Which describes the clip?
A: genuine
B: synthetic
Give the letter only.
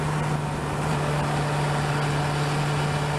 A